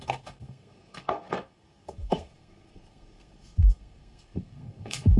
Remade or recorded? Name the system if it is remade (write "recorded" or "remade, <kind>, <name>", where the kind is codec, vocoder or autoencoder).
remade, codec, SNAC